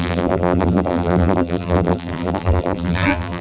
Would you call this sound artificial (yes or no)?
yes